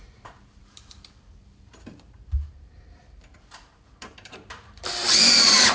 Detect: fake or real fake